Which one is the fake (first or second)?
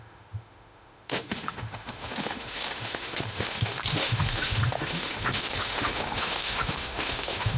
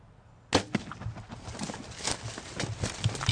first